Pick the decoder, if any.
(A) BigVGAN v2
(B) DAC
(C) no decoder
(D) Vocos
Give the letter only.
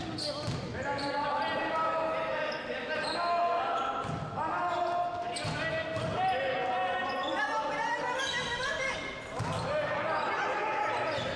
C